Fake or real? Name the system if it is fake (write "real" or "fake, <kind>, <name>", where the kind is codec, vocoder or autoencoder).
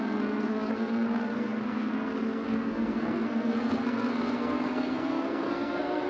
fake, codec, SNAC